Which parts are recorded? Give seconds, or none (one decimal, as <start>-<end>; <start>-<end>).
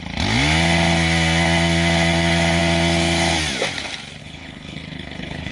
0.0-4.2